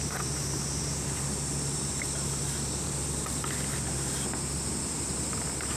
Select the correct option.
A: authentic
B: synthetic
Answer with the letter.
A